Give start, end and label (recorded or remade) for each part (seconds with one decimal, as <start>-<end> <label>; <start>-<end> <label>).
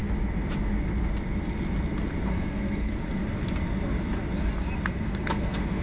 0.0-2.3 recorded; 2.3-2.9 remade; 2.9-4.9 recorded; 4.9-5.8 remade